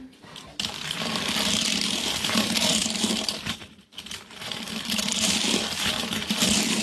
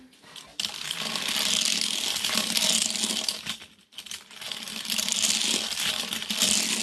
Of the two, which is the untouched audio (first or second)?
second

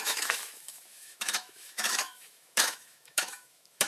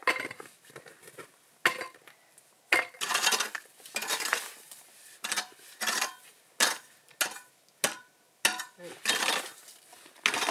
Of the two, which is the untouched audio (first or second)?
second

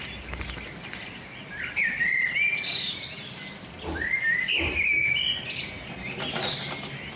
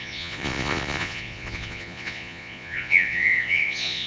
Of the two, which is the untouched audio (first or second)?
first